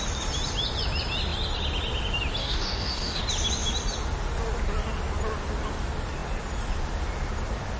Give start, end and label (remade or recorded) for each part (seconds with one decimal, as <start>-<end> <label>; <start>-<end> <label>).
0.0-2.4 recorded; 2.4-3.2 remade; 3.2-7.8 recorded